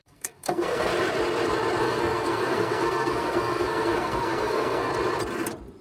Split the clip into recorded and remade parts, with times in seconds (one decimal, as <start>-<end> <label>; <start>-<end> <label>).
0.0-0.9 remade; 0.9-1.8 recorded; 1.8-4.9 remade; 4.9-5.8 recorded